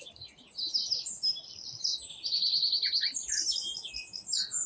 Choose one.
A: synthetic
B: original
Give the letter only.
B